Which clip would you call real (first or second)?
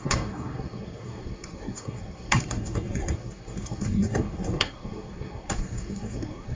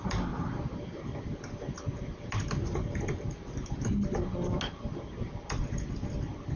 second